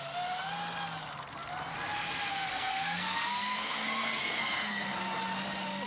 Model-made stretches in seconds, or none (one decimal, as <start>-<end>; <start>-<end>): 2.5-5.0